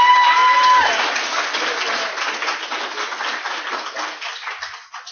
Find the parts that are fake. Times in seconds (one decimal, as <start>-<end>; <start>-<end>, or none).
none